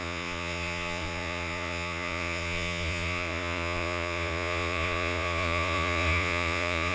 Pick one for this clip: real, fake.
fake